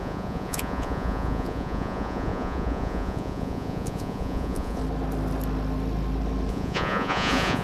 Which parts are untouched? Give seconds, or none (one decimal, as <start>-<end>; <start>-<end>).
4.8-6.5